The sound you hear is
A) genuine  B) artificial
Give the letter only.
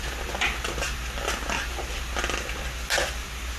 A